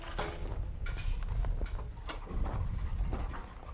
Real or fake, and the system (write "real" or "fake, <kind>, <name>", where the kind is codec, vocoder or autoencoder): real